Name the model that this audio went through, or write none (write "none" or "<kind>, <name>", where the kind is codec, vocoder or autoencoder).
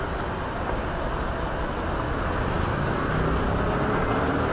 none